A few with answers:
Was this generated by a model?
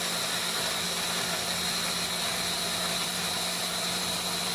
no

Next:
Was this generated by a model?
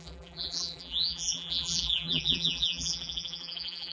yes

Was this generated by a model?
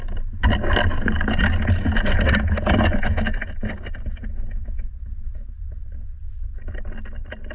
no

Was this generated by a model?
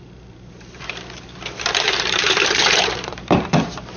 yes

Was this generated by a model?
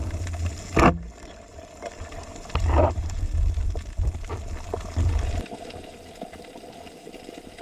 no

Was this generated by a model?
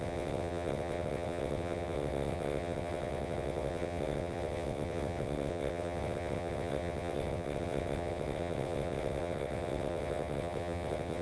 yes